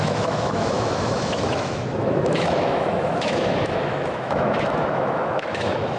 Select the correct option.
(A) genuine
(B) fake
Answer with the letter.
B